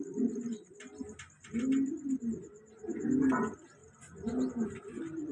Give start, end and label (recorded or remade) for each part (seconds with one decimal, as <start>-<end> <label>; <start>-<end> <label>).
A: 0.0-5.3 recorded

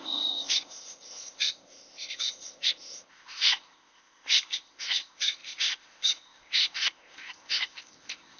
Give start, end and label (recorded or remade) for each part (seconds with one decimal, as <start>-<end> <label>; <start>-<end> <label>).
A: 0.0-8.4 remade

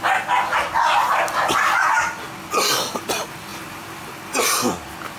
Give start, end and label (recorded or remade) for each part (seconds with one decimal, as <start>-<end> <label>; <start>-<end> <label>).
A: 0.0-5.2 recorded

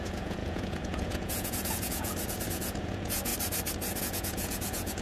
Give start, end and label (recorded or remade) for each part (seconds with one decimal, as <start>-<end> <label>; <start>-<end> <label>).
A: 0.0-3.3 remade; 3.3-4.0 recorded; 4.0-5.0 remade

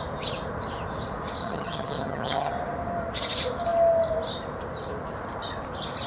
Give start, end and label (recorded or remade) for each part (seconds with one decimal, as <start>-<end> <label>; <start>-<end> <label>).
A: 0.0-1.4 recorded; 1.4-2.5 remade; 2.5-6.1 recorded